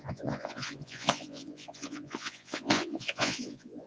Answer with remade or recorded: remade